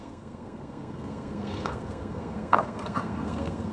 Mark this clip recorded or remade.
remade